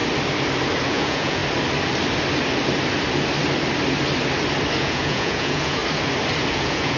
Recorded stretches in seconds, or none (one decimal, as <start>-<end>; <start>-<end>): 0.0-0.9; 1.4-4.8; 5.8-6.5